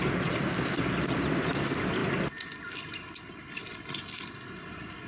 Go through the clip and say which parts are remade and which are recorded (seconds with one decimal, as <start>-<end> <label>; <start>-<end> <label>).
0.0-5.1 recorded